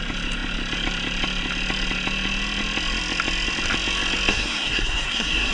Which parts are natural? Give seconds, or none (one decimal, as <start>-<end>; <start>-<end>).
0.0-4.3